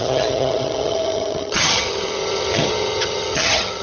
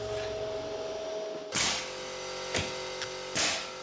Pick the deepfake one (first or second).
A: first